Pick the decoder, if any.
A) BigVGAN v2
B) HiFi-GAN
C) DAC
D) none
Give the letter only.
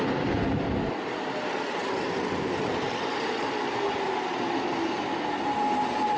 D